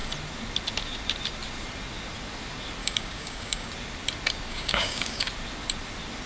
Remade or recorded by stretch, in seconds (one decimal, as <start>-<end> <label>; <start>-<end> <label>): 0.0-2.8 recorded; 2.8-3.7 remade; 3.7-4.5 recorded; 4.5-5.3 remade; 5.3-6.3 recorded